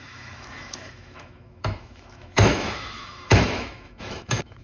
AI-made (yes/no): yes